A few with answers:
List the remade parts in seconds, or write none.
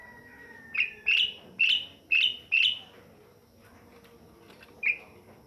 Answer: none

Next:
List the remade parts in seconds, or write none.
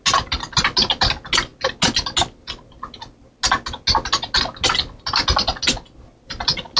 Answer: none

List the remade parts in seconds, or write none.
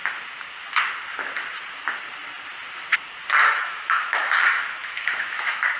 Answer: 3.4-5.8 (autoencoder, DAC-VAE)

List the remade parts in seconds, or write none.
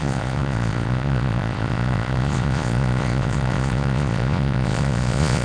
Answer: 0.0-5.4 (vocoder, Vocos)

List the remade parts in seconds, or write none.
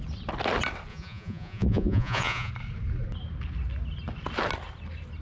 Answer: 0.9-2.5 (vocoder, Vocos)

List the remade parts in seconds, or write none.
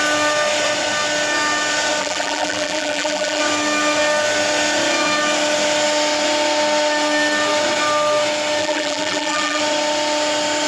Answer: 2.0-3.4 (vocoder, BigVGAN v2); 8.6-9.6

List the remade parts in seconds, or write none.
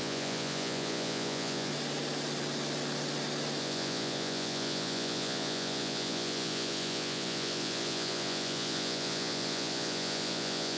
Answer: 0.0-1.7 (vocoder, Vocos); 3.6-10.8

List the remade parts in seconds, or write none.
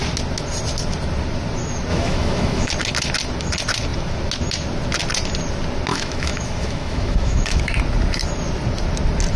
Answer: 1.9-2.7 (autoencoder, DAC-VAE); 5.9-7.8